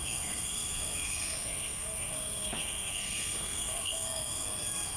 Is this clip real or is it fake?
fake